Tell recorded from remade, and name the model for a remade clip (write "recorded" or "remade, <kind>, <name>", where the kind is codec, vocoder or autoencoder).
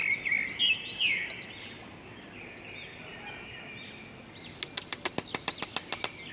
recorded